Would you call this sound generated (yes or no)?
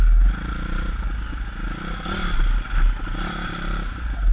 no